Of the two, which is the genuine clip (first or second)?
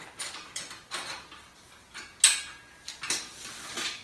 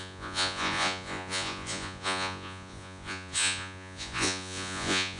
first